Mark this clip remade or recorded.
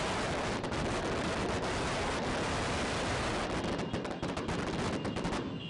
recorded